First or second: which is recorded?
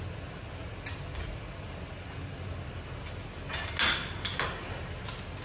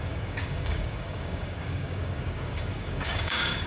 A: first